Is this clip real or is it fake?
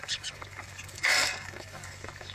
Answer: fake